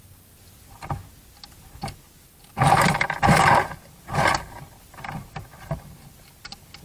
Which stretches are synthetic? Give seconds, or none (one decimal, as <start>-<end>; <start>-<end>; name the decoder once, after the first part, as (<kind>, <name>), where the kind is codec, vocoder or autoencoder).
none